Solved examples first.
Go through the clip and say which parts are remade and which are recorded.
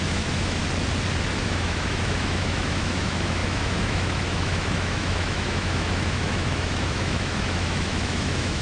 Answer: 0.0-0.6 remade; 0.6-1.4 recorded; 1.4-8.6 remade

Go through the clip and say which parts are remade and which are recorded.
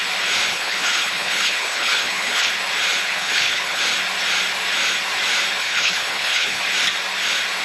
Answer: 0.0-0.5 recorded; 0.5-2.5 remade; 2.5-3.0 recorded; 3.0-3.8 remade; 3.8-5.6 recorded; 5.6-6.6 remade; 6.6-7.6 recorded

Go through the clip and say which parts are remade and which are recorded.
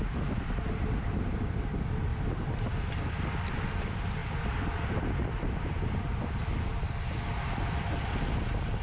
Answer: 0.0-2.1 remade; 2.1-3.1 recorded; 3.1-4.2 remade; 4.2-5.0 recorded; 5.0-6.5 remade; 6.5-7.8 recorded; 7.8-8.8 remade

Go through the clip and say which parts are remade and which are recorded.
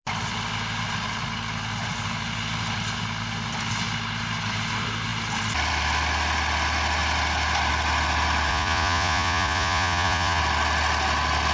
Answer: 0.0-8.5 recorded; 8.5-10.4 remade; 10.4-11.5 recorded